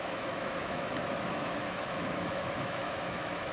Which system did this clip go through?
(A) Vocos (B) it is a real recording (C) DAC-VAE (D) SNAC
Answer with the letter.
C